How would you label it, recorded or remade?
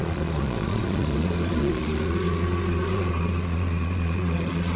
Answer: remade